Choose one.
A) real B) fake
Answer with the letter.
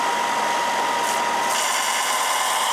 A